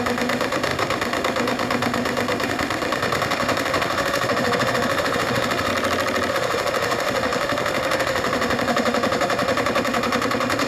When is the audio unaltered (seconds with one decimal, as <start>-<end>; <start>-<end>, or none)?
5.7-6.3